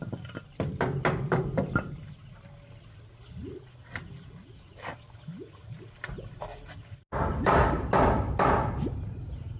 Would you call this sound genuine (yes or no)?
yes